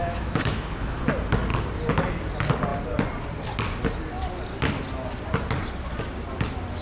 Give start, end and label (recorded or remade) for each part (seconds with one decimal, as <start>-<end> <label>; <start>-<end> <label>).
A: 0.0-1.0 remade; 1.0-6.8 recorded